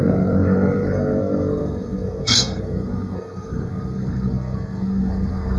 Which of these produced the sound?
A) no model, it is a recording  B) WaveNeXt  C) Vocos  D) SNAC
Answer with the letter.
D